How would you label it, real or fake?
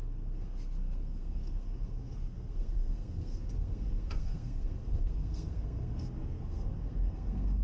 fake